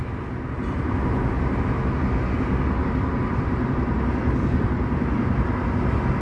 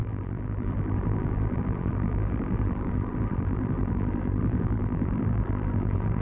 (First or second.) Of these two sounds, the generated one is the second